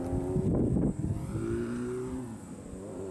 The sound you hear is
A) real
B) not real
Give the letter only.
A